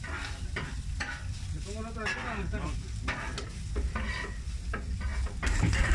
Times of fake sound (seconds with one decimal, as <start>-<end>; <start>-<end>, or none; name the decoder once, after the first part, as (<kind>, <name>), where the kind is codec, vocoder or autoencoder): 0.0-2.0 (vocoder, BigVGAN v2); 3.6-5.1